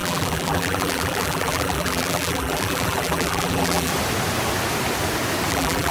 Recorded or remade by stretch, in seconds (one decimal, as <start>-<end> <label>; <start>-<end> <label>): 0.0-3.9 remade; 3.9-5.5 recorded; 5.5-5.9 remade